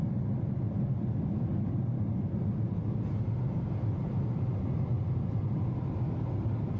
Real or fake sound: real